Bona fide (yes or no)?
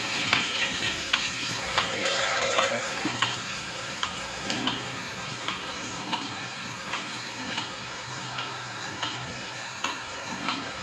no